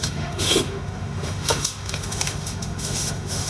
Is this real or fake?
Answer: fake